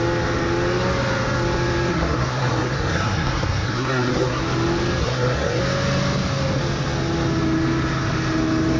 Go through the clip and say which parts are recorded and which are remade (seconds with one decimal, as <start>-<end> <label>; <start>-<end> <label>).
0.0-1.9 recorded; 1.9-4.4 remade; 4.4-5.0 recorded; 5.0-5.6 remade; 5.6-8.8 recorded